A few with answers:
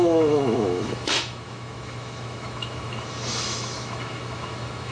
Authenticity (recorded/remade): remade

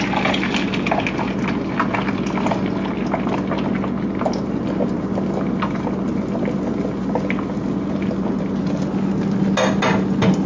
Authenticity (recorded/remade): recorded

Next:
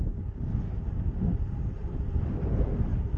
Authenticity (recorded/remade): recorded